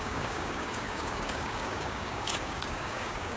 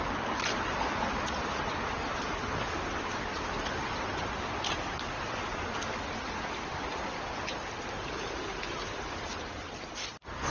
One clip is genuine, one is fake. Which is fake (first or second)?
first